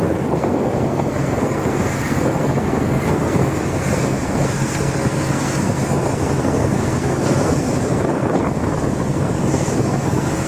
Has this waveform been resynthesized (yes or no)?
yes